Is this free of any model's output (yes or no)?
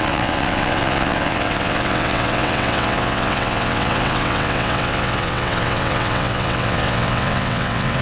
no